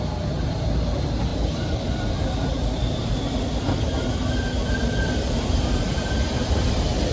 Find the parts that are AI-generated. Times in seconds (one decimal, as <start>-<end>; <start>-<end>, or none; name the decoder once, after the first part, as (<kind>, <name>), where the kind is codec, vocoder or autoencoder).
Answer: 1.3-3.9 (vocoder, BigVGAN v2); 4.6-7.1